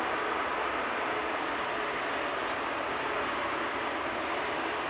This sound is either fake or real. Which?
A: real